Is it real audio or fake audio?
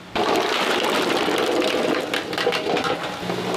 real